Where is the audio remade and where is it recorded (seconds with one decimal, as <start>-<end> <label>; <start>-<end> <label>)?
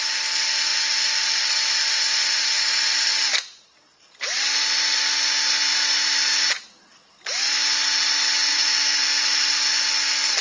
0.0-8.5 recorded; 8.5-9.0 remade; 9.0-10.4 recorded